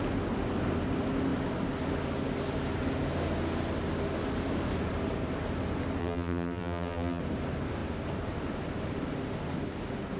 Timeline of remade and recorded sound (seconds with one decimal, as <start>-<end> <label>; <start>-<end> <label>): 0.0-6.0 recorded; 6.0-7.2 remade; 7.2-10.2 recorded